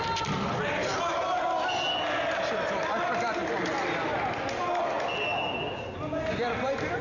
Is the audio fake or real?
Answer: real